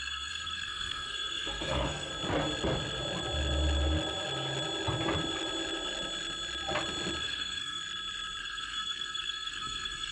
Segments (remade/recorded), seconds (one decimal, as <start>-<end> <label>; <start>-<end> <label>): 0.0-2.1 remade; 2.1-7.2 recorded; 7.2-7.8 remade; 7.8-8.4 recorded; 8.4-10.1 remade